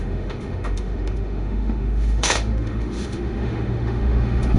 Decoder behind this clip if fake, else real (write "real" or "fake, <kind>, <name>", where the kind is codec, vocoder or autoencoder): fake, autoencoder, DAC-VAE